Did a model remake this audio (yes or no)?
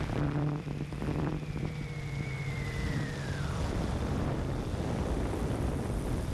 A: yes